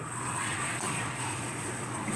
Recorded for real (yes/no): no